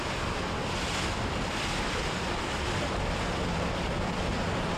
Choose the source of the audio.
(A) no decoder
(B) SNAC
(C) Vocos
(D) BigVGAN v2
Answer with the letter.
A